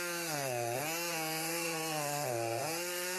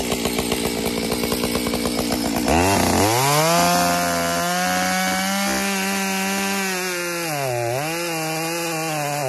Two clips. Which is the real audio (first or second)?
second